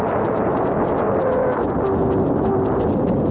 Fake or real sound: real